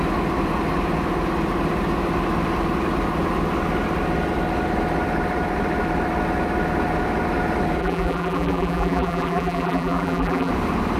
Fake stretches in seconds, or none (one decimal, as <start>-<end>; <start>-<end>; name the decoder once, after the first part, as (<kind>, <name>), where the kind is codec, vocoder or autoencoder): 7.8-10.5 (vocoder, BigVGAN v2)